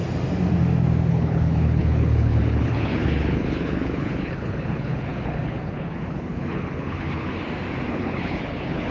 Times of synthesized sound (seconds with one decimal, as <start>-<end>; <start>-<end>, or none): 1.1-7.3; 7.9-8.9